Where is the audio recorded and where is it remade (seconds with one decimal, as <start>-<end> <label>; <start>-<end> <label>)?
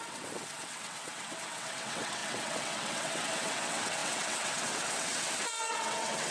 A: 0.0-6.3 remade